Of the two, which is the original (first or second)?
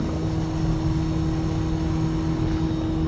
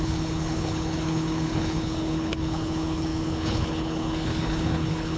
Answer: first